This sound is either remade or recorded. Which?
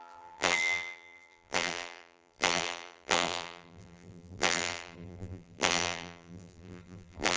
remade